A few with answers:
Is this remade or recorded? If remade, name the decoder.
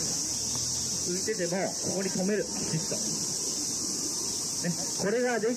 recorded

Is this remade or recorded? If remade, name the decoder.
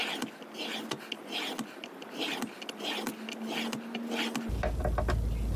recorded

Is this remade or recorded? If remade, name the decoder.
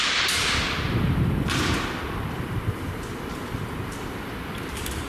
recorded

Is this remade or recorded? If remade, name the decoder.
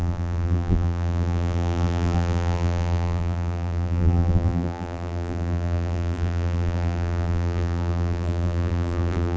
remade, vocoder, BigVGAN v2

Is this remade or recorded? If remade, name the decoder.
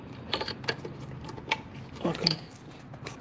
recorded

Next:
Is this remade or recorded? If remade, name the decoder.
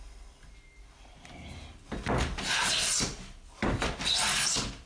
recorded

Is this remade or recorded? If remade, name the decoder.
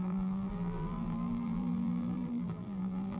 remade, vocoder, BigVGAN v2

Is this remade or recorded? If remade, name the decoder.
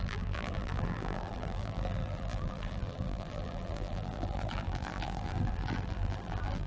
remade, vocoder, BigVGAN v2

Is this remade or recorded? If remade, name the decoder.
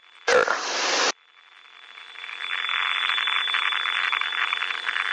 remade, vocoder, BigVGAN v2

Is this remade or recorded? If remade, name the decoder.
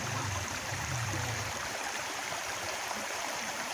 remade, vocoder, BigVGAN v2